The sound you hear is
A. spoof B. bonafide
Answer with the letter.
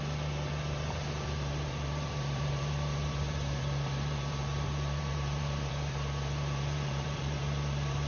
A